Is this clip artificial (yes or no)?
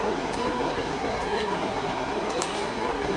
yes